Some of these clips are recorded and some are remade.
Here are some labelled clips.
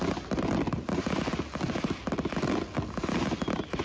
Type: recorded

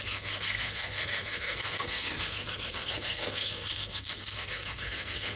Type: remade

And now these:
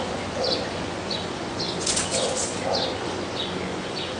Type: remade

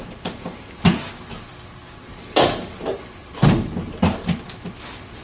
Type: recorded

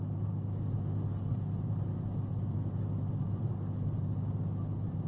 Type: recorded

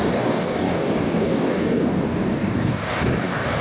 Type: remade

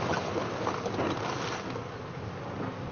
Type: recorded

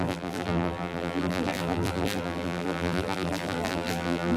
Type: remade